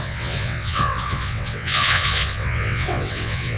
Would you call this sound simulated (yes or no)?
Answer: yes